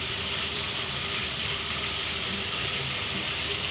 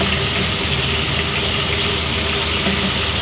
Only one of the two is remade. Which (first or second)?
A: first